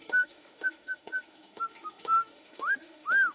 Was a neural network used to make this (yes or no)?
yes